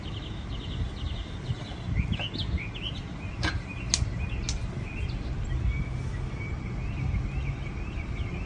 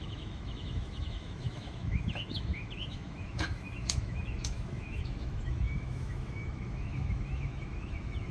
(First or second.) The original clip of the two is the first